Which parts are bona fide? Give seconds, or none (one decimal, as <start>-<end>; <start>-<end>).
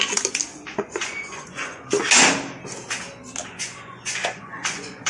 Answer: 0.0-0.5; 1.8-3.4